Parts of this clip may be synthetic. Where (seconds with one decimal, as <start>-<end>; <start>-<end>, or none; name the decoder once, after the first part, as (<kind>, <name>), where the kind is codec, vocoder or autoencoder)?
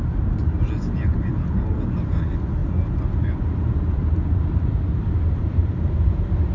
1.1-2.2 (vocoder, BigVGAN v2); 2.6-6.5